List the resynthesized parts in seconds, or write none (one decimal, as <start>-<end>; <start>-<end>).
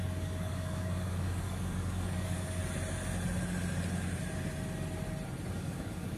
0.0-2.6; 5.5-6.2